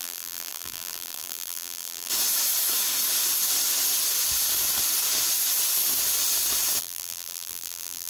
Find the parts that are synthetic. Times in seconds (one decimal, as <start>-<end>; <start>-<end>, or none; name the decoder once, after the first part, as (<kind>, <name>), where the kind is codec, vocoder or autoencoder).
0.0-2.1 (vocoder, BigVGAN v2); 6.8-8.1